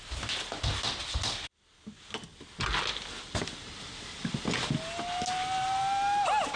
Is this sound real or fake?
real